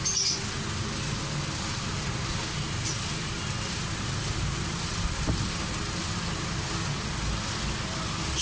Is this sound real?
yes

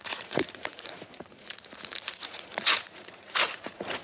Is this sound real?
no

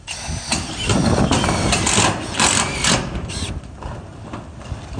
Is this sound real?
yes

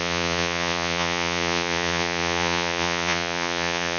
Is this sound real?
no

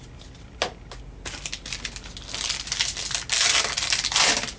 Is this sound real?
yes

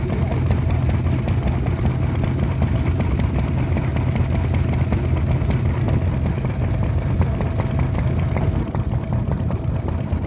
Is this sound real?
yes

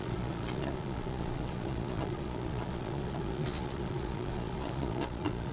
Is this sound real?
no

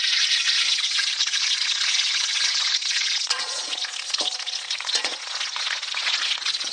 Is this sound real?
no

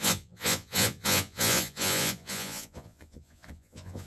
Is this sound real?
no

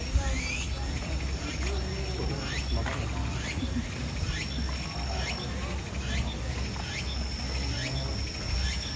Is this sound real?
yes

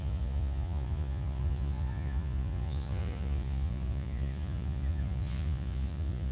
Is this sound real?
no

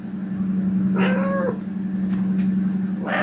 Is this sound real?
yes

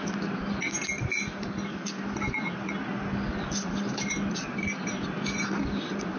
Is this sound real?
yes